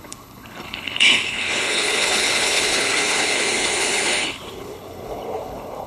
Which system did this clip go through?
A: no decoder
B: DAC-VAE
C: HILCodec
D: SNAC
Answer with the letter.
C